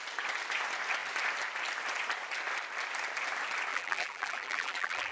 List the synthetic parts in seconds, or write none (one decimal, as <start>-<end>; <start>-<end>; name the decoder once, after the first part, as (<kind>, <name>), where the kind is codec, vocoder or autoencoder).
3.7-5.1 (vocoder, BigVGAN v2)